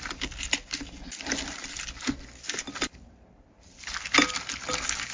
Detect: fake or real real